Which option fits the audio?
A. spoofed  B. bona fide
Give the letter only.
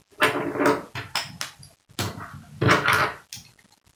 B